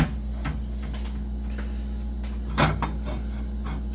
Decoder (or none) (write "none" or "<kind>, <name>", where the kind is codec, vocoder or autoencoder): none